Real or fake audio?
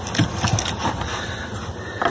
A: real